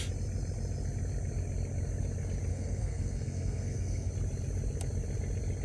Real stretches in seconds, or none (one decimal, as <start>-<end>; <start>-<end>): 0.0-2.5; 4.1-5.6